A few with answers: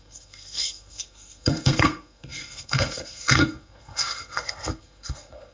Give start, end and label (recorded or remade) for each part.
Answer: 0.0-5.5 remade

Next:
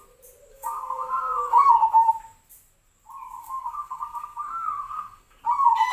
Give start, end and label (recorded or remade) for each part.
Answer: 0.0-0.5 recorded; 0.5-1.7 remade; 1.7-3.4 recorded; 3.4-5.4 remade; 5.4-5.9 recorded

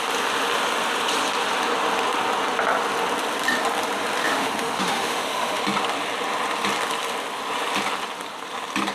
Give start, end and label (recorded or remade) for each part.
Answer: 0.0-4.2 recorded; 4.2-5.6 remade; 5.6-8.9 recorded

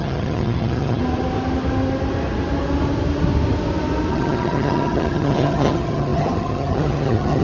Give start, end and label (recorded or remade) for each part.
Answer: 0.0-1.0 remade; 1.0-4.1 recorded; 4.1-7.4 remade

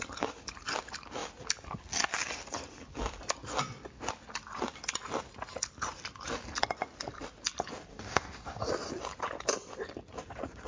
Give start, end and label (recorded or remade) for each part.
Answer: 0.0-7.9 recorded; 7.9-8.7 remade; 8.7-10.7 recorded

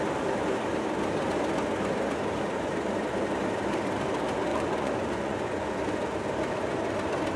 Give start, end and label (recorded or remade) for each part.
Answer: 0.0-4.5 recorded; 4.5-5.8 remade; 5.8-7.4 recorded

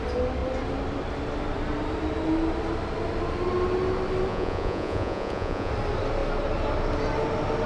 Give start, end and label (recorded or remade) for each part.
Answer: 0.0-4.3 recorded; 4.3-5.7 remade; 5.7-7.7 recorded